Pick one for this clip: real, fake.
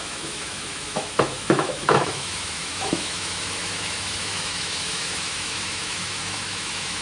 fake